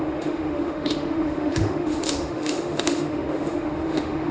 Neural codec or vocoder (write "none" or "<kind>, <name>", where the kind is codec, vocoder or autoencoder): autoencoder, DAC-VAE